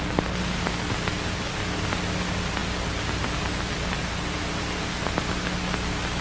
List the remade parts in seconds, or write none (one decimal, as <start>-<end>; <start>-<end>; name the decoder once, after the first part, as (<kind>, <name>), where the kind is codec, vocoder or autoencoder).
none